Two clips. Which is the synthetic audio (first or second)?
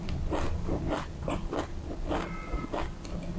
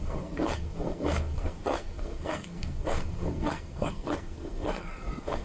second